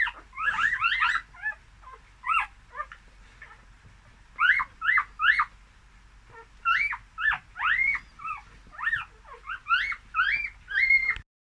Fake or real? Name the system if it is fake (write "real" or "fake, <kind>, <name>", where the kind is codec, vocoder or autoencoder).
real